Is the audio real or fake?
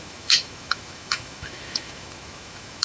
fake